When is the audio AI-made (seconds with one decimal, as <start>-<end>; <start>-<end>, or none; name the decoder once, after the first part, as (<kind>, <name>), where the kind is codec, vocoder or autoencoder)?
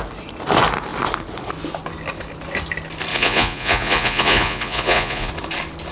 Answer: 3.1-5.3 (vocoder, Vocos)